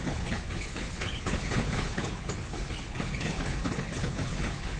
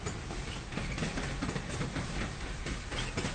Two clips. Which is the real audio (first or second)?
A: second